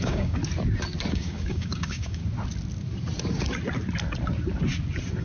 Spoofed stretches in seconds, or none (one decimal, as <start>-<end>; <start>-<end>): 0.0-0.4; 1.1-2.2